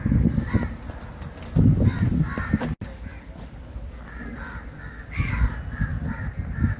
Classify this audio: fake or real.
real